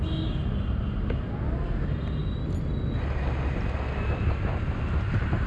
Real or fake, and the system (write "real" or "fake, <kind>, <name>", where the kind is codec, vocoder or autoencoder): real